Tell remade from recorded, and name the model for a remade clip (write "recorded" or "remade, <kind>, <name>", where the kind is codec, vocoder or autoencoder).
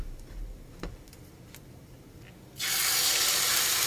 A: recorded